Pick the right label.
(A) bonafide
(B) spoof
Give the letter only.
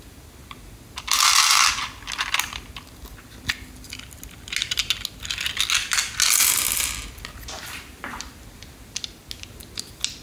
A